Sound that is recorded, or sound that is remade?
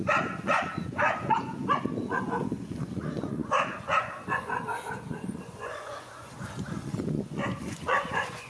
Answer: remade